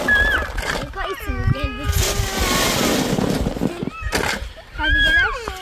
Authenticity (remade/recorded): recorded